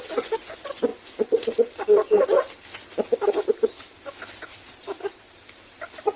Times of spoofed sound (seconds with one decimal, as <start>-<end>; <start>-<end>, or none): none